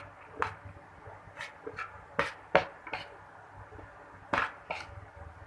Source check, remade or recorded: recorded